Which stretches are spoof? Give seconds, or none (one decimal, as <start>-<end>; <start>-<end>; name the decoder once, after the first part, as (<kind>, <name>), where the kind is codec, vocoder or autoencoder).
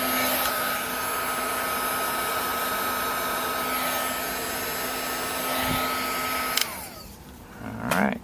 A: 6.6-8.2 (vocoder, BigVGAN v2)